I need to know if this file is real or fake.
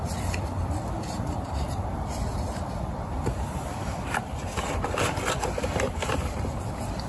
fake